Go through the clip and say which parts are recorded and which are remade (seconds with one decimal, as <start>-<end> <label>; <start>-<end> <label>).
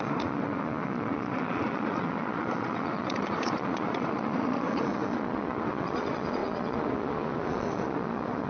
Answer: 0.0-8.5 remade